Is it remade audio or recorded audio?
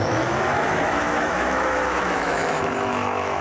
remade